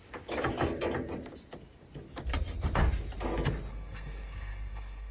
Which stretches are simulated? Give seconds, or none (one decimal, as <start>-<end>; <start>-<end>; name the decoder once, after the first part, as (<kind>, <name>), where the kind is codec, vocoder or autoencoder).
3.7-5.1 (codec, SNAC)